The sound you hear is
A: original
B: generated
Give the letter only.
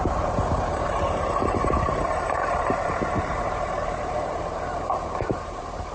B